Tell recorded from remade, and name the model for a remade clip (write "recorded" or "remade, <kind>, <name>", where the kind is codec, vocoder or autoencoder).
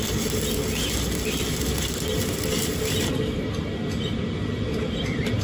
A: recorded